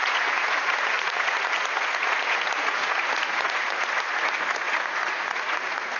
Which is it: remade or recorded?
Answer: remade